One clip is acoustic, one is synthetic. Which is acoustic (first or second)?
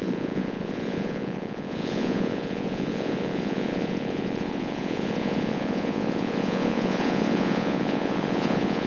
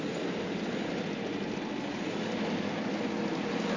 second